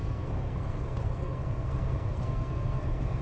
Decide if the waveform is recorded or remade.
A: remade